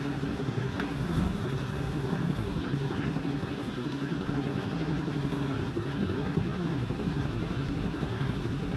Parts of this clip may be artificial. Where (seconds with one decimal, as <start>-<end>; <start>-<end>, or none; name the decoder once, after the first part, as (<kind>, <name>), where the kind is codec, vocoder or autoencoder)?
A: 0.0-8.8 (codec, SNAC)